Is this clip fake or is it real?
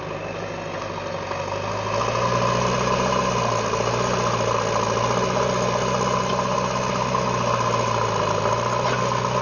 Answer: real